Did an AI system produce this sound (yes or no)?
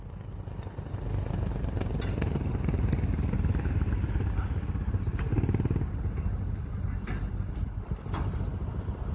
no